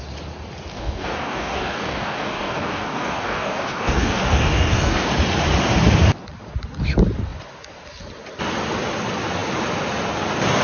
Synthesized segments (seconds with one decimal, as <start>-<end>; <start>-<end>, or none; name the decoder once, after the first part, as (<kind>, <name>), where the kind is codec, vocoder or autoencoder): 0.7-5.1 (codec, DAC)